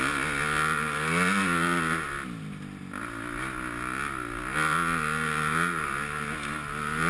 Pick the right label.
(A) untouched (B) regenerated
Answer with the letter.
A